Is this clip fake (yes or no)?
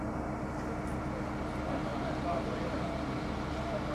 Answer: no